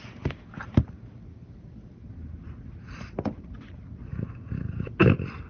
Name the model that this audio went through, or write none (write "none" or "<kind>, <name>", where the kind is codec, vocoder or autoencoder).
none